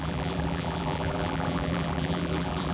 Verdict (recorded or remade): remade